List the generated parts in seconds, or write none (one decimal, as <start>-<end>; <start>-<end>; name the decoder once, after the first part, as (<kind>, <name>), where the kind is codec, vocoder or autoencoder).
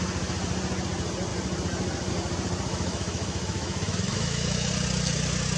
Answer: 2.7-4.7 (autoencoder, DAC-VAE)